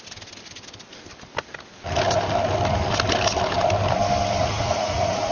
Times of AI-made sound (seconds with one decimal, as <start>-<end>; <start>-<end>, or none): 4.4-5.3